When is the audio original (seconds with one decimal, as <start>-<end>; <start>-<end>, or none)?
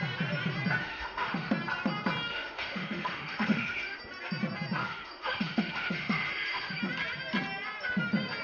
0.0-0.8; 1.5-2.3; 4.0-4.8; 6.8-8.4